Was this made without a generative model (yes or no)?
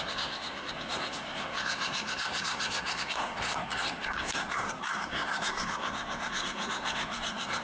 no